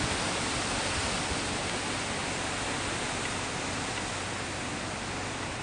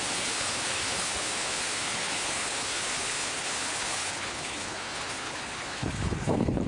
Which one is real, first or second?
first